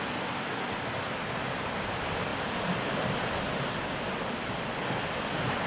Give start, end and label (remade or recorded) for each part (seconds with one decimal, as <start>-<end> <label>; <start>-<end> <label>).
0.0-5.7 recorded

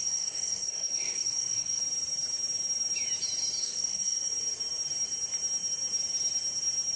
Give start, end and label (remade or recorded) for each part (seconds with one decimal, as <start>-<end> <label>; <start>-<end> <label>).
0.0-1.8 remade; 1.8-3.6 recorded; 3.6-4.3 remade; 4.3-7.0 recorded

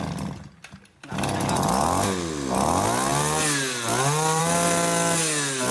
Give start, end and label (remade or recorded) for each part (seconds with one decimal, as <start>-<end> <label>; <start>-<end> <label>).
0.0-5.7 recorded